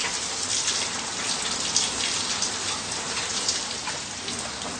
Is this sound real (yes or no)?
yes